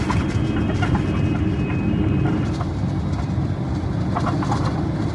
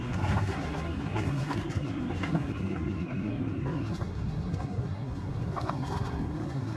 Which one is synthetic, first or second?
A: second